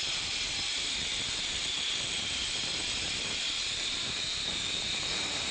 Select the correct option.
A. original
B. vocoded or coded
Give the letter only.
B